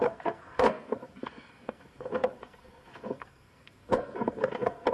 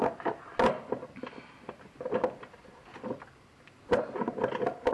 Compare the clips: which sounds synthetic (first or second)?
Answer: first